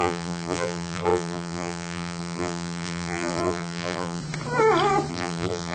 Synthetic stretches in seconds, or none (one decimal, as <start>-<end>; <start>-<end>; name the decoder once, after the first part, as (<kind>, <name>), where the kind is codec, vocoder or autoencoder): 0.0-4.2 (vocoder, BigVGAN v2); 5.1-5.7